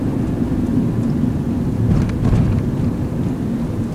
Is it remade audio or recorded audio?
recorded